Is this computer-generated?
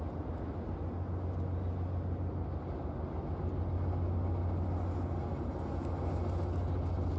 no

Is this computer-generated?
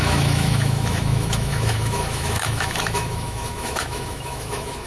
yes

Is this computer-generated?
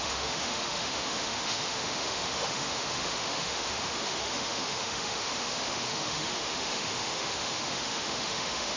yes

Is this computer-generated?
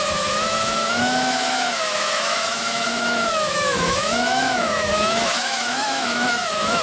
yes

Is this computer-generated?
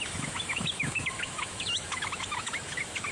yes